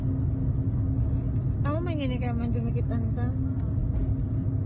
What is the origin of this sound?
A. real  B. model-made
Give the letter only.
A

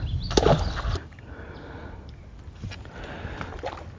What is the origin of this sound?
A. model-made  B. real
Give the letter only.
B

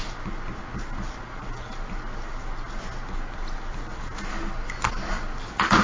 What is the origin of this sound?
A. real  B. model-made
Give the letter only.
A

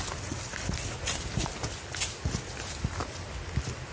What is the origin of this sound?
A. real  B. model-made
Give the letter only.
A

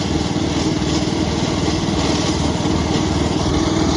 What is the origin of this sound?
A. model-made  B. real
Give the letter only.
B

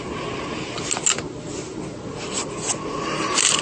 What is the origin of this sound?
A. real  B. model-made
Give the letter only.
A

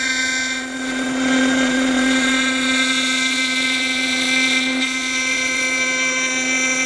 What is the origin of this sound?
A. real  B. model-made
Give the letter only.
B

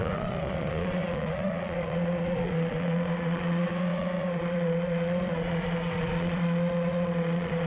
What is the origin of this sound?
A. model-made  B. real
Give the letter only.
A